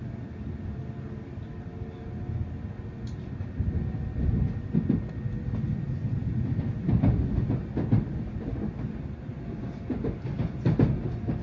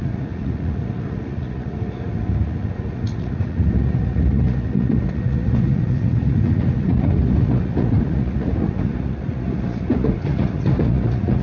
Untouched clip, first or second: first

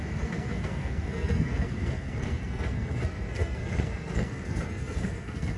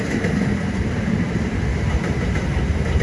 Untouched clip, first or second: second